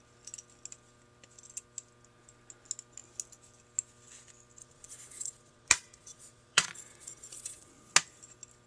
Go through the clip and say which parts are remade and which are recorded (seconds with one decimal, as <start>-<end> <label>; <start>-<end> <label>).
0.0-4.6 recorded; 4.6-7.7 remade; 7.7-8.7 recorded